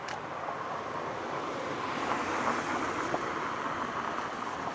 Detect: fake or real real